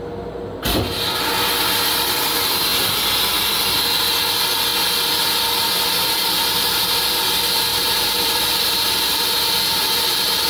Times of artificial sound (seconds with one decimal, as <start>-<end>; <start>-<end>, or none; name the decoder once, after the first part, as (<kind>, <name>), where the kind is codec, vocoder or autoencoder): 7.7-9.5 (vocoder, BigVGAN v2)